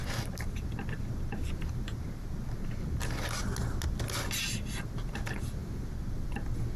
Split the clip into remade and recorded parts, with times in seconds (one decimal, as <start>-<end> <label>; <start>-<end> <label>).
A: 0.0-6.8 recorded